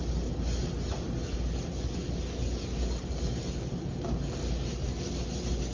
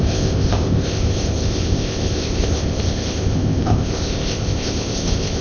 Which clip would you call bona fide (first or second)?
first